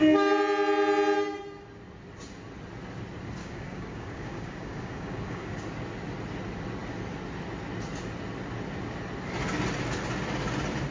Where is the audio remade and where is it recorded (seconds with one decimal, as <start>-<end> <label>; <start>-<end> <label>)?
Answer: 0.0-3.4 recorded; 3.4-5.6 remade; 5.6-10.9 recorded